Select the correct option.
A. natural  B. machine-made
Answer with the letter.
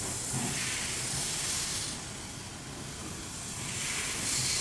A